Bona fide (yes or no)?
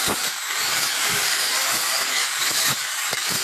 no